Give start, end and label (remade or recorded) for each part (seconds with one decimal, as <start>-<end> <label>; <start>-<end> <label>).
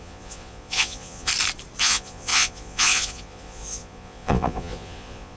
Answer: 0.0-1.3 remade; 1.3-1.8 recorded; 1.8-5.4 remade